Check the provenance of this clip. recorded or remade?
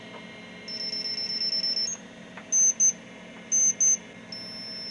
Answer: recorded